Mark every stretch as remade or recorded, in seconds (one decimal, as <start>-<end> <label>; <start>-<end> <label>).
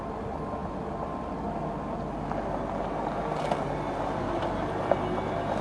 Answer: 0.0-5.6 recorded